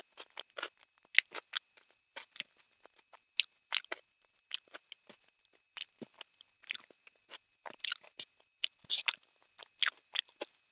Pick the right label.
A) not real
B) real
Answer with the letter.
B